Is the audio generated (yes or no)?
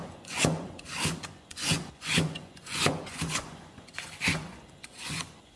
yes